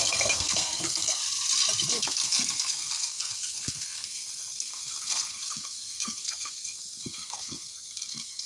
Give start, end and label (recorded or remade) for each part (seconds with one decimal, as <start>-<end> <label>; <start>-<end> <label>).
0.0-1.2 remade; 1.2-1.9 recorded; 1.9-8.5 remade